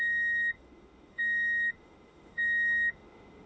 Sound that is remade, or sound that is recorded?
remade